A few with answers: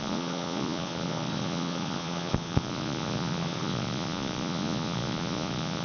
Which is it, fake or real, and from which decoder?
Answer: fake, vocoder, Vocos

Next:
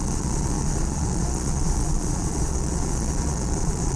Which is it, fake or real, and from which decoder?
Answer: fake, vocoder, Vocos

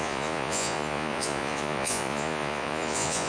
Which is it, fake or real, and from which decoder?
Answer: fake, vocoder, Vocos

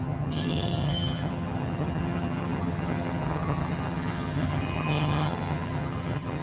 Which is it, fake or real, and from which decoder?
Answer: fake, vocoder, HiFi-GAN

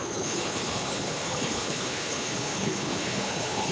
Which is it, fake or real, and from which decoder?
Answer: fake, codec, HILCodec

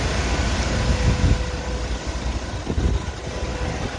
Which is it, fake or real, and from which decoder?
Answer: real